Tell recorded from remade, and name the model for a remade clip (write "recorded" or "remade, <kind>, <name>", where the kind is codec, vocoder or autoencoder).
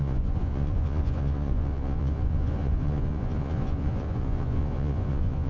remade, vocoder, Vocos